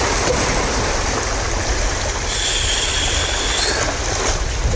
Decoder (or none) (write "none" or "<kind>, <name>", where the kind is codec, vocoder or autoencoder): none